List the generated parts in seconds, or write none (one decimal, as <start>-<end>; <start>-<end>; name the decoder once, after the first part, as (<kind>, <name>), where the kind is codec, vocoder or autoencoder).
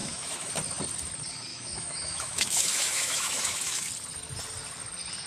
0.0-0.5 (autoencoder, DAC-VAE); 1.5-3.9